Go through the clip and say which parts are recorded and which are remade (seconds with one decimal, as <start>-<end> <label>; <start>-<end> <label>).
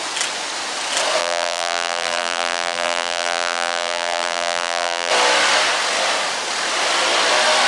0.0-1.2 recorded; 1.2-5.1 remade; 5.1-7.7 recorded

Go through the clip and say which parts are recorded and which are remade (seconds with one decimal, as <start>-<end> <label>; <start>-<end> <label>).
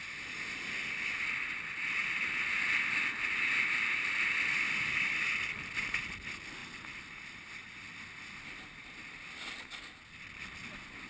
0.0-11.1 recorded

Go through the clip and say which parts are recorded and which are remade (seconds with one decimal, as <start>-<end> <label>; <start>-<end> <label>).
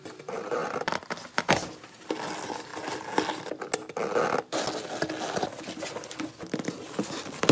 0.0-0.6 remade; 0.6-1.4 recorded; 1.4-2.7 remade; 2.7-5.6 recorded; 5.6-7.5 remade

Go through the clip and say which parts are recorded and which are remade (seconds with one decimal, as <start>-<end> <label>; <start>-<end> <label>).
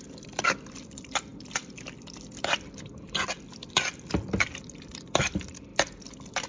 0.0-5.7 remade; 5.7-6.5 recorded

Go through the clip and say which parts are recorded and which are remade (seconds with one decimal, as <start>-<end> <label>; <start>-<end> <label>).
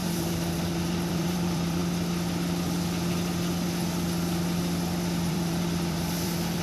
0.0-1.8 remade; 1.8-5.3 recorded; 5.3-6.6 remade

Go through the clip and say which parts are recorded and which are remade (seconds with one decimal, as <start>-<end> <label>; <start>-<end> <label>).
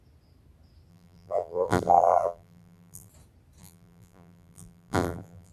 0.0-0.9 recorded; 0.9-3.1 remade; 3.1-3.6 recorded; 3.6-5.5 remade